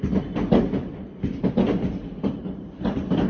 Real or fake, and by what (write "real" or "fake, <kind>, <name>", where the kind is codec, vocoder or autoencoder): fake, vocoder, BigVGAN v2